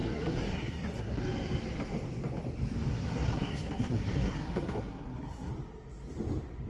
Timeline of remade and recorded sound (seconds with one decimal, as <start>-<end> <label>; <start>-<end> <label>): 0.0-1.2 remade; 1.2-2.9 recorded; 2.9-5.5 remade; 5.5-6.7 recorded